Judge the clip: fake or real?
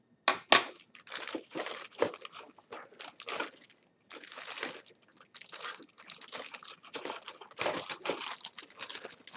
real